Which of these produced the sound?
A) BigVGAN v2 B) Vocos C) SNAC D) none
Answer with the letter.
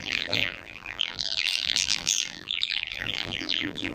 A